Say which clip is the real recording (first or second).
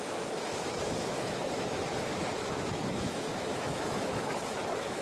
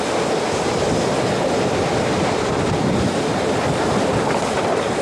second